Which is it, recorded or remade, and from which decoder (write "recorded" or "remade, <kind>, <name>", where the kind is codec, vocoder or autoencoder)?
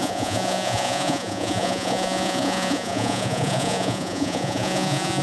remade, vocoder, Vocos